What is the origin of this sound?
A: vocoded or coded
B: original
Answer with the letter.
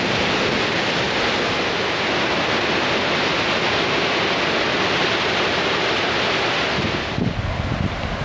B